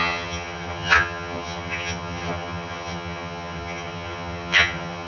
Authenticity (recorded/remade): remade